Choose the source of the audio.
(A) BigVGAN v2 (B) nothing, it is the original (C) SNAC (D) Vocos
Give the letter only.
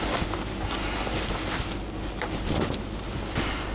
B